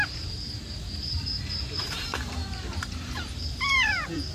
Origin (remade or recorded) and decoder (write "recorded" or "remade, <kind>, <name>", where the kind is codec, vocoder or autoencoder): remade, vocoder, BigVGAN v2